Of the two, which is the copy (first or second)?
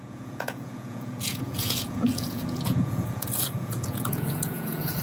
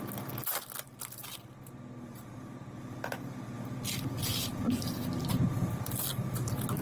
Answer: first